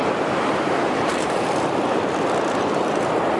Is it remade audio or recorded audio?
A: remade